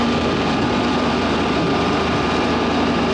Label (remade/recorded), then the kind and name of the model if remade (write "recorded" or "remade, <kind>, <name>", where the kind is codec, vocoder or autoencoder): remade, vocoder, BigVGAN v2